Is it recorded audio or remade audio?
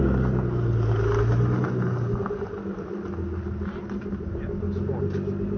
recorded